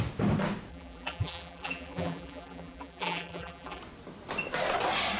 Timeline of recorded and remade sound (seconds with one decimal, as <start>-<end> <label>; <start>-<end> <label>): 0.0-0.7 recorded; 0.7-3.8 remade; 3.8-5.2 recorded

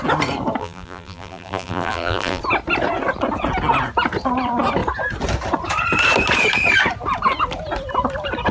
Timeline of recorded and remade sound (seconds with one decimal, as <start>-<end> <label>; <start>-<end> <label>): 0.0-0.6 recorded; 0.6-2.4 remade; 2.4-8.5 recorded

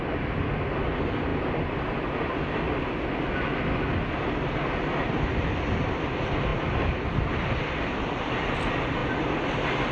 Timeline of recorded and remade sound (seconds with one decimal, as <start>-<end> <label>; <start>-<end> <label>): 0.0-1.3 recorded; 1.3-2.4 remade; 2.4-6.5 recorded; 6.5-8.5 remade; 8.5-9.9 recorded

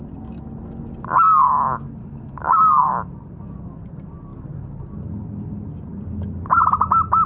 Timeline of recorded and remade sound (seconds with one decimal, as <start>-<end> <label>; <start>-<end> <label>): 0.0-2.0 recorded; 2.0-2.9 remade; 2.9-7.3 recorded

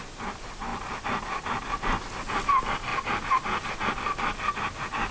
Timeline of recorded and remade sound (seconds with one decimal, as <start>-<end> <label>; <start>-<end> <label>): 0.0-5.1 recorded

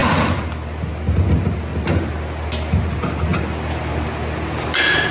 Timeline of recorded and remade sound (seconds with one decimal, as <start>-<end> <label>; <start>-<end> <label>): 0.0-5.1 recorded